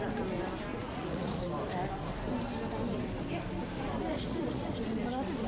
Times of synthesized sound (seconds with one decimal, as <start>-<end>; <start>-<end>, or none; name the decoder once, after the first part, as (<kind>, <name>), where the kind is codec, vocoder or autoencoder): 0.7-1.4 (vocoder, Vocos); 4.1-4.9